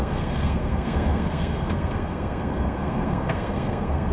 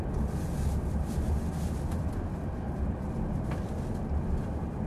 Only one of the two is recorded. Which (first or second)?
second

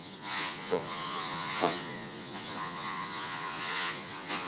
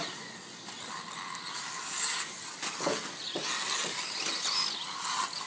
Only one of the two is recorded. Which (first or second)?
second